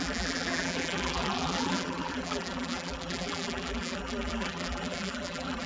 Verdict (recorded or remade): remade